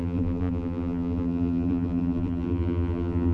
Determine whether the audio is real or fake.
fake